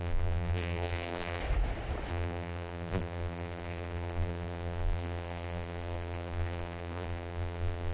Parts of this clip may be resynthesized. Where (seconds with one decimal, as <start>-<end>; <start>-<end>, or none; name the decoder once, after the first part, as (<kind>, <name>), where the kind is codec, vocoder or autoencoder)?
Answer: 0.0-1.4 (vocoder, BigVGAN v2); 2.1-7.9